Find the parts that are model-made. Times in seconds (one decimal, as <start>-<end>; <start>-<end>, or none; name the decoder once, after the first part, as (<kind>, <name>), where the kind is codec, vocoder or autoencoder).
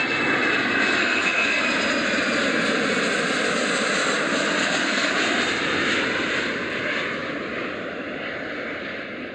1.0-1.6 (codec, SNAC); 4.6-5.1